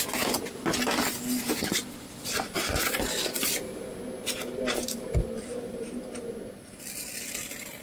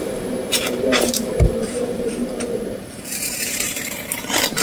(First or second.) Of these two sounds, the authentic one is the first